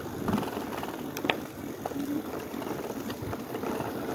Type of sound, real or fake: fake